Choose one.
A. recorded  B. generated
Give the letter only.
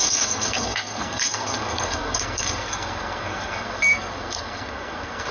B